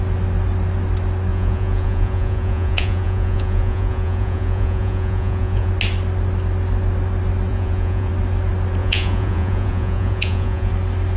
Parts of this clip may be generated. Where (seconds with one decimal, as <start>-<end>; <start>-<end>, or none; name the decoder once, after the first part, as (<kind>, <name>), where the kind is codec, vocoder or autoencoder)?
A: 1.3-5.7 (vocoder, Vocos); 7.5-8.1; 8.8-10.7